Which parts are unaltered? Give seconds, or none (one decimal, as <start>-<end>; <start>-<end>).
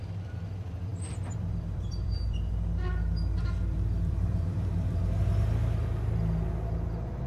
0.0-0.9; 5.0-7.3